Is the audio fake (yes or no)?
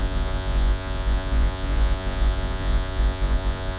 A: yes